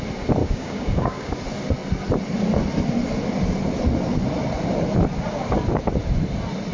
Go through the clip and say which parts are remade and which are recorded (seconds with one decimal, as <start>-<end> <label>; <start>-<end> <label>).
0.0-0.4 recorded; 0.4-1.3 remade; 1.3-6.7 recorded